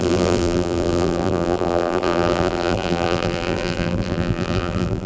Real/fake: fake